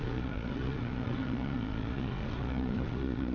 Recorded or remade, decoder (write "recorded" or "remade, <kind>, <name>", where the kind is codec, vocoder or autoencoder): remade, vocoder, Vocos